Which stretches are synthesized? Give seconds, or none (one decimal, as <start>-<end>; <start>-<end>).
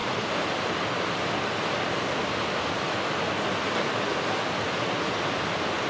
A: none